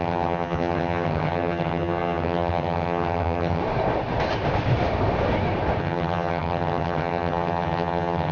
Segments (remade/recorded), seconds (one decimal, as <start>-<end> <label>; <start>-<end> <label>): 0.0-3.6 remade; 3.6-5.8 recorded; 5.8-8.3 remade